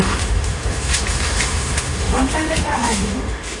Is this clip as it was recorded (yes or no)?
no